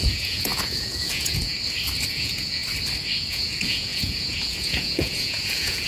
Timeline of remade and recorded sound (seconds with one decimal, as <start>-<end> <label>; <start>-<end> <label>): 0.0-1.5 remade; 1.5-2.1 recorded; 2.1-2.6 remade; 2.6-3.3 recorded; 3.3-5.9 remade